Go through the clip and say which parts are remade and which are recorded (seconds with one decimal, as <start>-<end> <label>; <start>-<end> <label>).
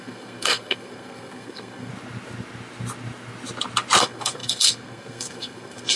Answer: 0.0-1.9 remade; 1.9-4.0 recorded; 4.0-6.0 remade